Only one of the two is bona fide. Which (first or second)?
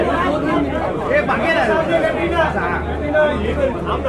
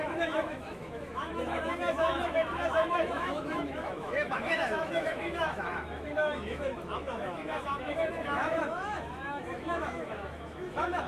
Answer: first